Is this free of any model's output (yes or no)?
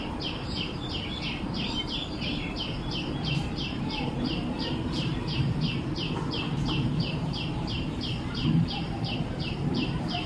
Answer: no